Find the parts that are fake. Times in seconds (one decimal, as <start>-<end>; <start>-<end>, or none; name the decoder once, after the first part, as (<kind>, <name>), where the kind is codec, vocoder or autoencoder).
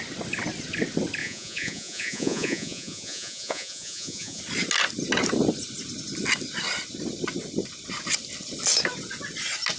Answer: 1.2-4.4 (vocoder, Vocos)